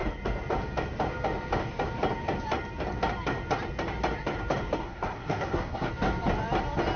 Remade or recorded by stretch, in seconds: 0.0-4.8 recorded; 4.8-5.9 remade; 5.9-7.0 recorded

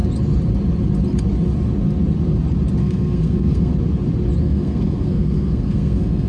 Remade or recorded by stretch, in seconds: 0.0-2.8 recorded; 2.8-3.7 remade; 3.7-4.4 recorded; 4.4-6.3 remade

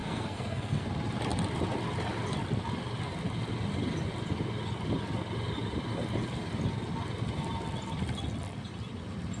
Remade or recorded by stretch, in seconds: 0.0-0.9 remade; 0.9-9.4 recorded

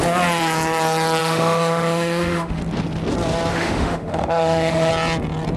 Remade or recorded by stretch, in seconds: 0.0-1.2 recorded; 1.2-2.6 remade; 2.6-3.5 recorded; 3.5-4.9 remade; 4.9-5.6 recorded

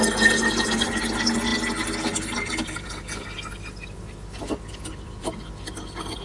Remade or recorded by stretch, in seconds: 0.0-6.2 recorded

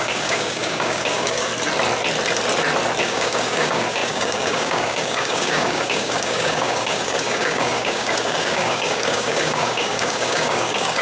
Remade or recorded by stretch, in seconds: 0.0-1.5 remade; 1.5-3.0 recorded; 3.0-11.0 remade

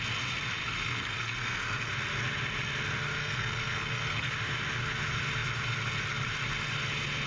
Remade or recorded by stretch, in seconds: 0.0-0.6 recorded; 0.6-1.9 remade; 1.9-3.2 recorded; 3.2-4.3 remade; 4.3-7.3 recorded

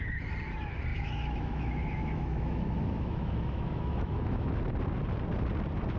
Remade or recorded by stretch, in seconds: 0.0-0.9 recorded; 0.9-4.5 remade; 4.5-6.0 recorded